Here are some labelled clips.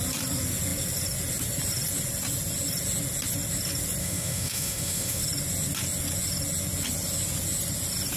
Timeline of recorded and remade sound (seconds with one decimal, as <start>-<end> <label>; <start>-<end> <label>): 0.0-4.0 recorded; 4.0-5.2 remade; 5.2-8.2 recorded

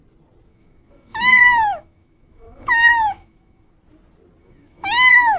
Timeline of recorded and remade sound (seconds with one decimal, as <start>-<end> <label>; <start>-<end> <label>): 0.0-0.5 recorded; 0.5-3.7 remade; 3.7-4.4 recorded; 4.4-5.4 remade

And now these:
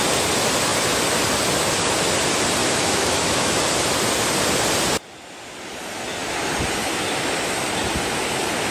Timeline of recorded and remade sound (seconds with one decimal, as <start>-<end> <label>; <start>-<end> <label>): 0.0-2.6 recorded; 2.6-3.6 remade; 3.6-8.7 recorded

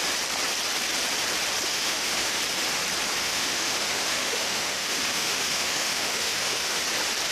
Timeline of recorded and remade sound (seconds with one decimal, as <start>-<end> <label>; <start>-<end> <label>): 0.0-1.7 recorded; 1.7-2.4 remade; 2.4-3.2 recorded; 3.2-6.8 remade; 6.8-7.3 recorded